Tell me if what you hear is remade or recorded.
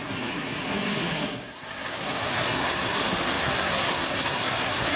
remade